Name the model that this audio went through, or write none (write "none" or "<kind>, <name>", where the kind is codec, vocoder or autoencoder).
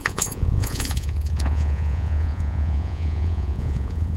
vocoder, Vocos